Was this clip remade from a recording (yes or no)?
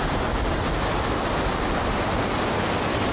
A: no